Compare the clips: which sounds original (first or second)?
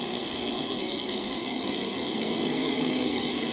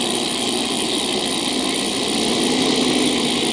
second